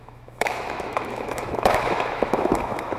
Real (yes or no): no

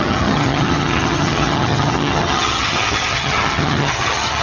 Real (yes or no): no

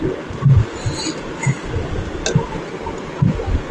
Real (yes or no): yes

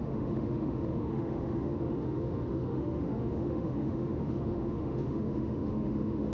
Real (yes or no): no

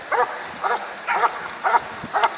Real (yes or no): yes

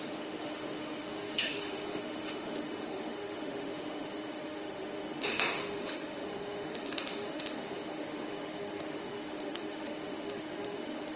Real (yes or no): no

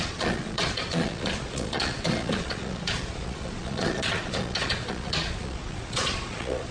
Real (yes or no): no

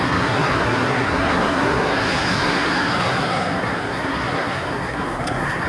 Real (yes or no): no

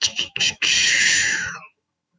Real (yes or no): no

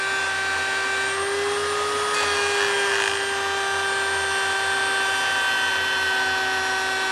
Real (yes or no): yes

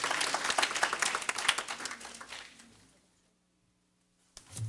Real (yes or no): yes